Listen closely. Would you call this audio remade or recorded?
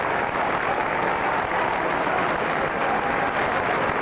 recorded